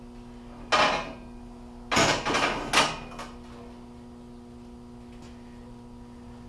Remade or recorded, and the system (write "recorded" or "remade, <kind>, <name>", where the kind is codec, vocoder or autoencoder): recorded